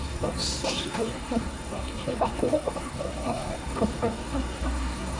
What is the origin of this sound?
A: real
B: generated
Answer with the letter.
B